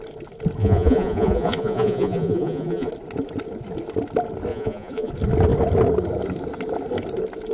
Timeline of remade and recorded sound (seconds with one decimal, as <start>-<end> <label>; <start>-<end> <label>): 0.0-0.6 recorded; 0.6-2.9 remade; 2.9-4.5 recorded; 4.5-5.1 remade; 5.1-7.5 recorded